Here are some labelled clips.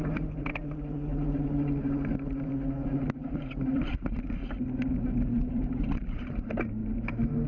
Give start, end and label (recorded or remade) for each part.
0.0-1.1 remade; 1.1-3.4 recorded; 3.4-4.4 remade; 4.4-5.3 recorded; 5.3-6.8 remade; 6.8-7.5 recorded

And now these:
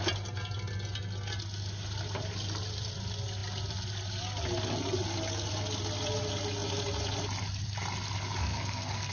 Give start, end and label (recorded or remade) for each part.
0.0-8.4 recorded; 8.4-9.1 remade

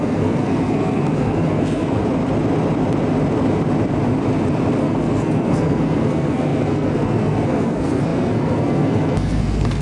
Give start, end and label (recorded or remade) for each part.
0.0-2.0 remade; 2.0-4.8 recorded; 4.8-9.8 remade